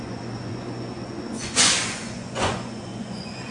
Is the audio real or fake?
fake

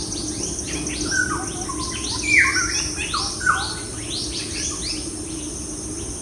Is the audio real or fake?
real